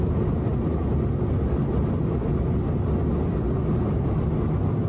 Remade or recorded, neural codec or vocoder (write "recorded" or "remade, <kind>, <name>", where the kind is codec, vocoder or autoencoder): recorded